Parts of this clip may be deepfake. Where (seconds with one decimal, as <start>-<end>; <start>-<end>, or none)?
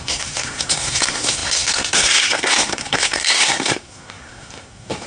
0.0-5.1